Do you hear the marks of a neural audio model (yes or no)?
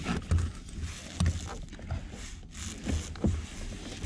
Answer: no